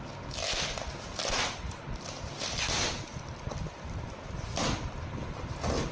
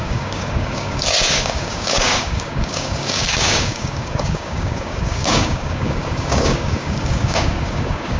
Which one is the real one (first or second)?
first